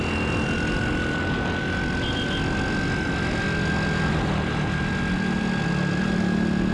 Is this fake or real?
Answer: real